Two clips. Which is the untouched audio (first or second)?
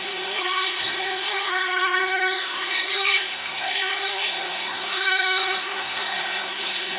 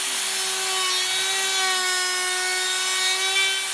second